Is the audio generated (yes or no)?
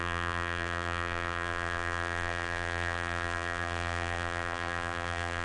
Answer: yes